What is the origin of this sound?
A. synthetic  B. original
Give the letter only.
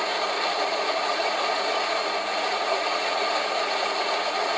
A